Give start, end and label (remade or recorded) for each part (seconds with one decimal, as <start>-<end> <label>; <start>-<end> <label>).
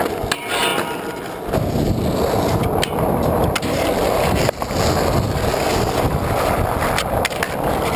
0.0-0.7 recorded; 0.7-1.4 remade; 1.4-8.0 recorded